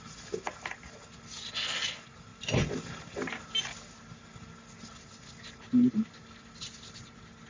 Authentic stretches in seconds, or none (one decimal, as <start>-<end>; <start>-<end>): 0.0-7.5

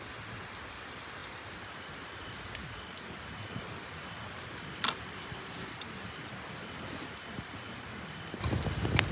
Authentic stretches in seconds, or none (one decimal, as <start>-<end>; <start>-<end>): 0.0-9.1

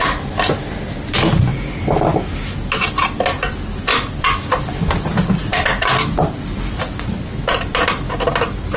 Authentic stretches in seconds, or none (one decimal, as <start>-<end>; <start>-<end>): 0.0-8.8

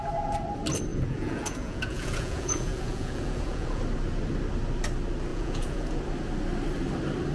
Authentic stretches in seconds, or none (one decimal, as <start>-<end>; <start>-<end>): 0.0-0.9; 3.8-5.3; 6.0-7.3

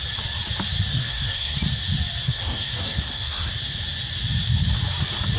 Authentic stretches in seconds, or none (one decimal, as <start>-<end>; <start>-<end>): 0.0-0.9; 1.6-2.2; 3.5-5.4

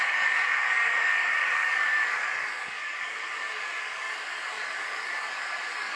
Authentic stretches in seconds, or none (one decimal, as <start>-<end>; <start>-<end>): none

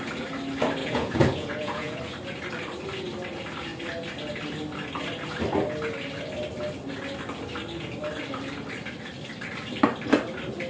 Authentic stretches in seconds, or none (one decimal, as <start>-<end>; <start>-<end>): 0.0-0.8; 2.0-10.7

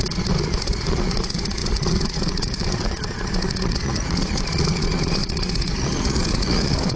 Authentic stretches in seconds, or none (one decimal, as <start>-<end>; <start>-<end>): none